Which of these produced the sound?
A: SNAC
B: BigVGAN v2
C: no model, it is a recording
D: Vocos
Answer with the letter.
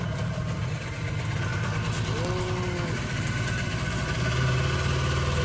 C